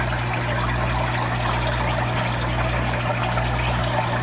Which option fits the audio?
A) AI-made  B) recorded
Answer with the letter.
B